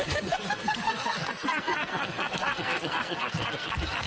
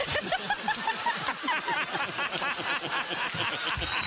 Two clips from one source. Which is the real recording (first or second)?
second